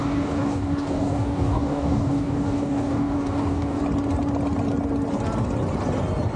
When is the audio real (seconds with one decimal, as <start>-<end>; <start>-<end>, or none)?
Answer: 3.8-6.4